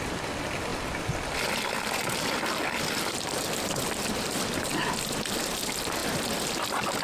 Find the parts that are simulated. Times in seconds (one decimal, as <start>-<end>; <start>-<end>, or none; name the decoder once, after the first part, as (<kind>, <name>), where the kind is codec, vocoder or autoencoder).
0.7-4.9 (vocoder, BigVGAN v2)